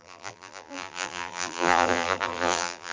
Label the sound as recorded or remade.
remade